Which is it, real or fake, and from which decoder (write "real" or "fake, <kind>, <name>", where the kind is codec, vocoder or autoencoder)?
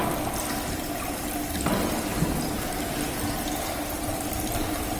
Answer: real